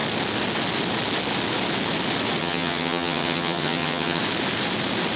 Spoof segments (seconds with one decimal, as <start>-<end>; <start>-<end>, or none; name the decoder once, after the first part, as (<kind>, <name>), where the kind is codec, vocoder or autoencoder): 2.4-4.2 (vocoder, HiFi-GAN)